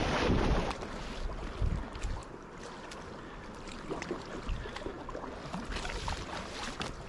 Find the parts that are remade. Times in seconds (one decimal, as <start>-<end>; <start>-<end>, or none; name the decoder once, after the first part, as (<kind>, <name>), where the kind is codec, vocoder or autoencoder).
none